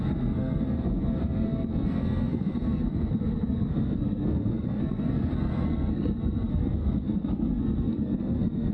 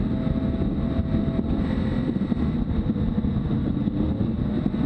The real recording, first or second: second